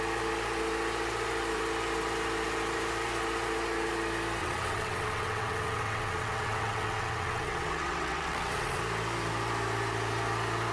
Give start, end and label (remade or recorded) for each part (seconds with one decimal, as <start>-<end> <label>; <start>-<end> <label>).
0.0-4.4 recorded; 4.4-8.8 remade; 8.8-10.7 recorded